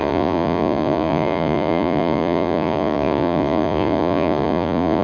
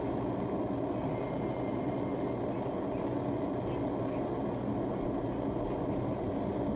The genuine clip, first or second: second